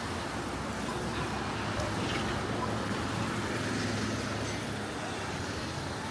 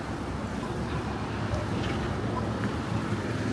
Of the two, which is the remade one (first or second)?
second